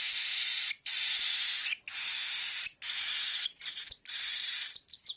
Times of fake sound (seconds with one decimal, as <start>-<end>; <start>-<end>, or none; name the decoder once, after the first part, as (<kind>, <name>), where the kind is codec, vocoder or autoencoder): none